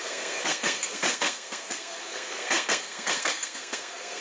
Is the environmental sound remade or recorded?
remade